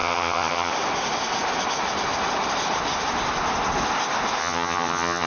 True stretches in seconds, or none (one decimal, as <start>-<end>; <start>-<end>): 0.7-4.4